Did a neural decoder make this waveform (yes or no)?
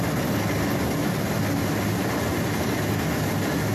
no